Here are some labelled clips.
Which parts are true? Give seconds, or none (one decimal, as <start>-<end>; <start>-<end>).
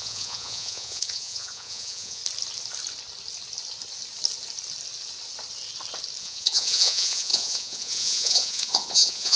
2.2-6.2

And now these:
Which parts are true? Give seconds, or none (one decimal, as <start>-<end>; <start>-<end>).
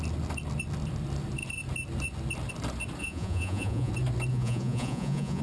0.0-3.0; 3.9-4.3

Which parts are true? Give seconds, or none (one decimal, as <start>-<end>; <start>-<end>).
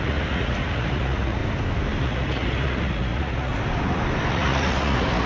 1.4-2.0; 3.5-4.3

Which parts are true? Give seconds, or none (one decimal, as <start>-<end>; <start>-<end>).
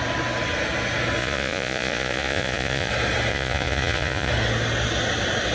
0.0-1.2; 2.9-3.3; 4.3-5.5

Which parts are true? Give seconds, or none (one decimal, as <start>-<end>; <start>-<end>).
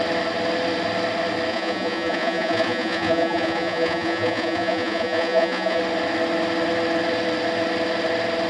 0.0-1.5; 5.8-8.5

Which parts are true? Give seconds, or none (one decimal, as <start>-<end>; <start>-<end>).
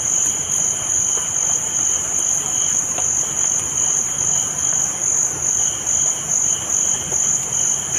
0.0-8.0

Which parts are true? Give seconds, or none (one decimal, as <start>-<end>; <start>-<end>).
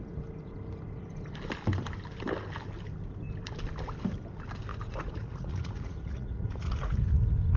0.0-4.7; 7.1-7.6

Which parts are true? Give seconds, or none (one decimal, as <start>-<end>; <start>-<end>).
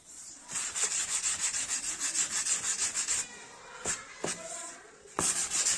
1.0-4.5